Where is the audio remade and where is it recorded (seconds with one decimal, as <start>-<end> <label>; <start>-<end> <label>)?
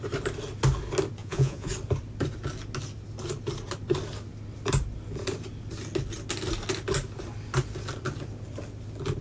0.0-1.2 recorded; 1.2-1.7 remade; 1.7-9.2 recorded